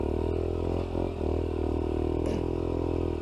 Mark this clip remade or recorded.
recorded